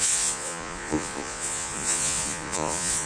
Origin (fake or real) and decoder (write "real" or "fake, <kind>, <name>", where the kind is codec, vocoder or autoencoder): fake, vocoder, Vocos